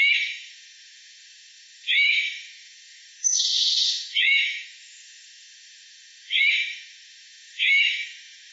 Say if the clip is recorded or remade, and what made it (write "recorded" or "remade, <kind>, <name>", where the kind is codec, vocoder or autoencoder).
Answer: remade, autoencoder, DAC-VAE